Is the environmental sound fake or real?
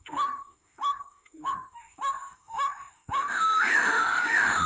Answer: fake